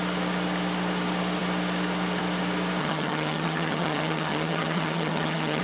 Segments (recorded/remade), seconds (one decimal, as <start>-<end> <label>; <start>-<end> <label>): 0.0-2.8 recorded; 2.8-5.6 remade